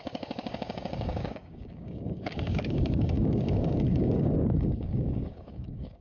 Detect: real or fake fake